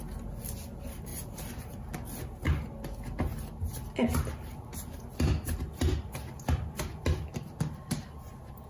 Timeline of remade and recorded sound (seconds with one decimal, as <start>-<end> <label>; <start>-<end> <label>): 0.0-1.1 recorded; 1.1-1.6 remade; 1.6-8.7 recorded